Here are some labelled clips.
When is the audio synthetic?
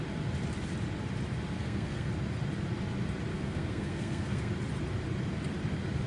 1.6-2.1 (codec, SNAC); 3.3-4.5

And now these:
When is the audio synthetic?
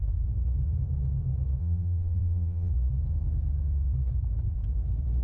1.6-2.7 (vocoder, BigVGAN v2)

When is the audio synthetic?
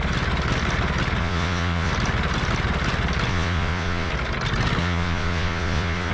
1.2-1.9 (vocoder, Vocos); 3.3-4.1; 4.8-6.1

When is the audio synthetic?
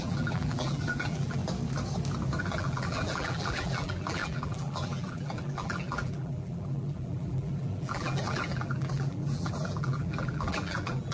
0.0-1.4 (vocoder, BigVGAN v2); 2.4-11.1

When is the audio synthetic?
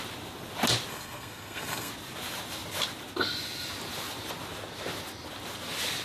0.9-1.9 (codec, SNAC)